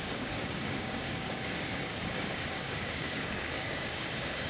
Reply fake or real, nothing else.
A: fake